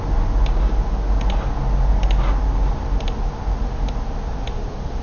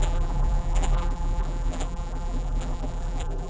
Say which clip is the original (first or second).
first